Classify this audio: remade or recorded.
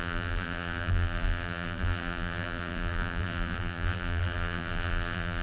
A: remade